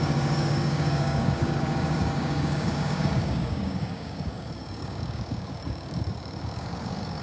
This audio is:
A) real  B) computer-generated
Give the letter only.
B